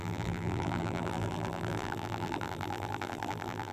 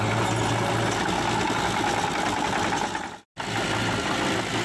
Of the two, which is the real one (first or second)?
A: second